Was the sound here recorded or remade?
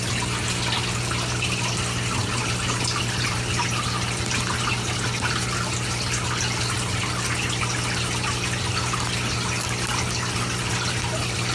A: recorded